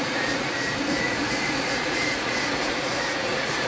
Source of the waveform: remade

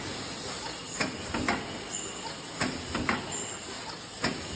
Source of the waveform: recorded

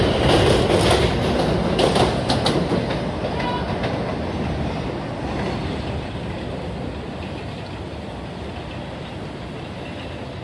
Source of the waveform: recorded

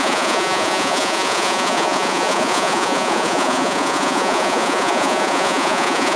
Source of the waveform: remade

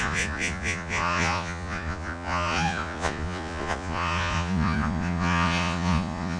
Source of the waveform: remade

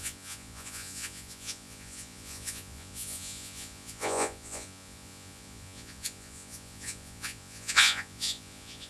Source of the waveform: remade